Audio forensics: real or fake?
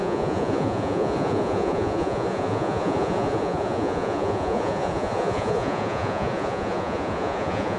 fake